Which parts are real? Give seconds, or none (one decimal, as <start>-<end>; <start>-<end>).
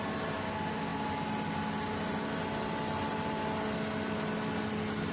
0.0-5.1